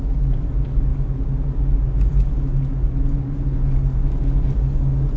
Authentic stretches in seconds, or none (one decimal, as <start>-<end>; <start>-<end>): 0.0-5.2